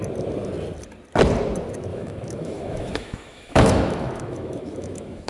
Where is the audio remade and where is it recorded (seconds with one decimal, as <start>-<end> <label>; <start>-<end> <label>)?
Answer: 0.0-1.9 recorded; 1.9-5.3 remade